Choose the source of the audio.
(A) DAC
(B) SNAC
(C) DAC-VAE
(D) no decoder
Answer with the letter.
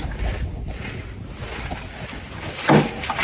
D